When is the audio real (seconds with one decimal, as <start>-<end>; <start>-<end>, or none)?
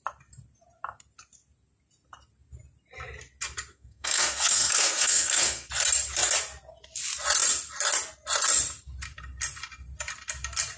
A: 0.0-3.7; 5.7-10.8